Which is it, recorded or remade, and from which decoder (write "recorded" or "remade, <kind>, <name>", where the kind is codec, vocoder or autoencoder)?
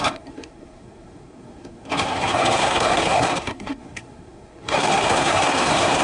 remade, codec, SNAC